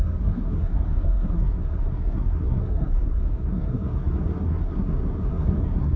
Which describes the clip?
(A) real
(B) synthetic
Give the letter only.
B